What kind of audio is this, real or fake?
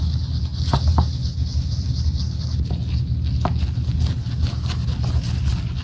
real